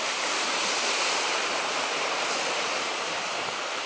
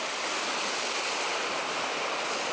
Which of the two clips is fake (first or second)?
first